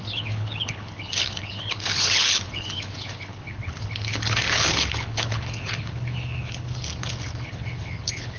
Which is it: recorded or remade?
remade